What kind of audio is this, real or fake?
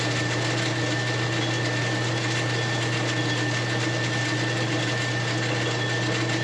real